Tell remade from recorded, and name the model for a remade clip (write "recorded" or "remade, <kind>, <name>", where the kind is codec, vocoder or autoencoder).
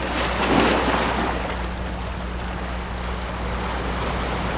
recorded